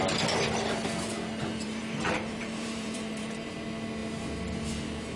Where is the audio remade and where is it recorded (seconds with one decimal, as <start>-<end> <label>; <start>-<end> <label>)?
0.0-1.1 recorded; 1.1-3.5 remade; 3.5-5.2 recorded